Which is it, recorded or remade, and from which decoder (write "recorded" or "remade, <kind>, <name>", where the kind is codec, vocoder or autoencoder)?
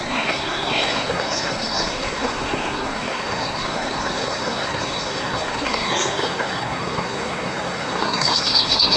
remade, codec, SNAC